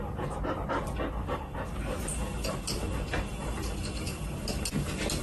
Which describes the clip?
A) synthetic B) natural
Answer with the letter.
B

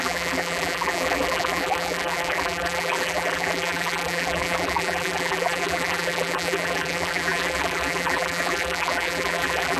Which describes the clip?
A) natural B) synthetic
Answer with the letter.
B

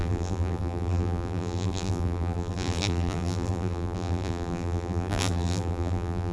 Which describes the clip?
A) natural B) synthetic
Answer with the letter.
B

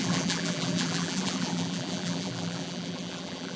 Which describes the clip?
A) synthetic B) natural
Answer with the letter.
A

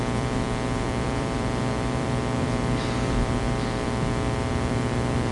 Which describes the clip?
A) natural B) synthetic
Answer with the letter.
B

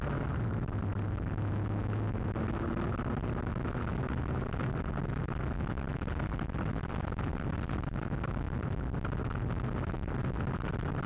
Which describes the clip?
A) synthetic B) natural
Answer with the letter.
B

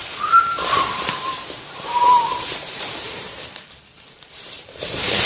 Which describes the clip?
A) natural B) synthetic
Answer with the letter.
B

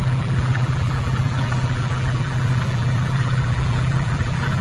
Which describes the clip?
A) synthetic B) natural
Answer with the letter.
A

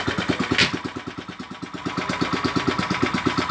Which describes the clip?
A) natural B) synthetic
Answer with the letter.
A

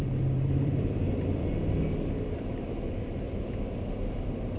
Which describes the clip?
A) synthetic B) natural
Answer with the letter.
A